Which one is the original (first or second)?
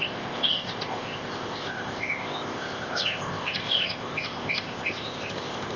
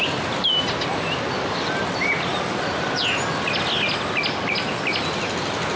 second